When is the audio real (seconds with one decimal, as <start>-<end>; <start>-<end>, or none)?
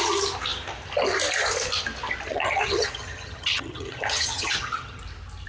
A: 0.0-2.3; 5.0-5.5